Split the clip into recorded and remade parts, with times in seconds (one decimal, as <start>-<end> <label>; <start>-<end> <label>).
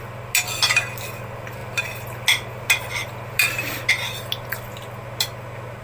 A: 0.0-5.8 recorded